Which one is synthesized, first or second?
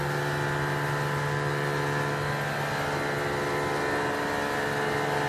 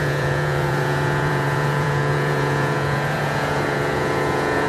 second